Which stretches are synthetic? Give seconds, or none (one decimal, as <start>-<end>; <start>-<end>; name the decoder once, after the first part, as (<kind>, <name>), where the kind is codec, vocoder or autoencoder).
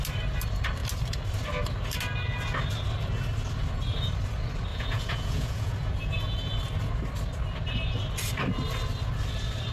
4.7-6.6 (vocoder, Vocos)